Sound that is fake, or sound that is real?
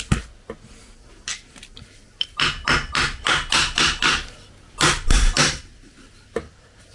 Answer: real